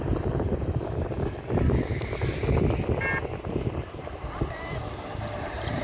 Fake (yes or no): no